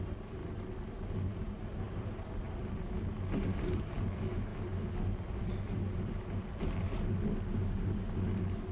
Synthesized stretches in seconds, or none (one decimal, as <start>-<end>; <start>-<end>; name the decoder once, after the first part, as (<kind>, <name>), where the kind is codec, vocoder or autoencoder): none

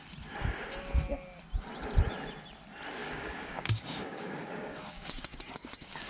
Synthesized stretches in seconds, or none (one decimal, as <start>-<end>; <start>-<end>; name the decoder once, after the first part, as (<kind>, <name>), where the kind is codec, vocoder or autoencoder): 3.0-6.1 (codec, DAC)